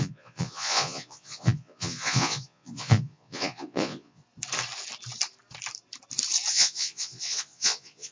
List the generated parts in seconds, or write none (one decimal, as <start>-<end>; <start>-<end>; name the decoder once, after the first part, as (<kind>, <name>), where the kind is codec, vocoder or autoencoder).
0.0-4.2 (vocoder, Vocos); 6.5-8.1